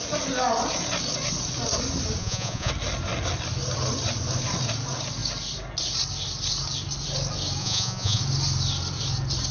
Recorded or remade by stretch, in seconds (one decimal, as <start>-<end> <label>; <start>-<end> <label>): 0.0-2.2 recorded; 2.2-2.7 remade; 2.7-7.6 recorded; 7.6-8.2 remade; 8.2-9.5 recorded